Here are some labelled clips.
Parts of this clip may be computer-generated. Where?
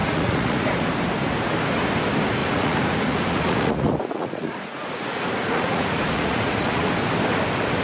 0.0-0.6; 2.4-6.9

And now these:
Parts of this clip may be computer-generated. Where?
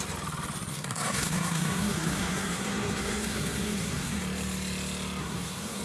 0.7-4.2; 5.2-5.8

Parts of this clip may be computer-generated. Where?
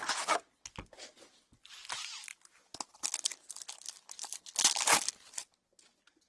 none